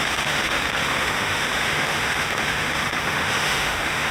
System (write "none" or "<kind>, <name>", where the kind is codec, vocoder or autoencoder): autoencoder, DAC-VAE